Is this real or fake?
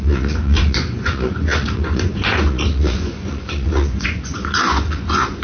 fake